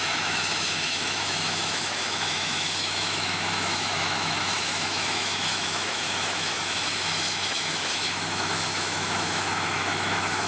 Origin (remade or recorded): remade